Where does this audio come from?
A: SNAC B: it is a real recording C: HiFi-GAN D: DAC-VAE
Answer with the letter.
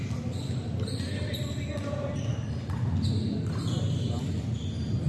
B